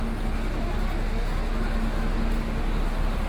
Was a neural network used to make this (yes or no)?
no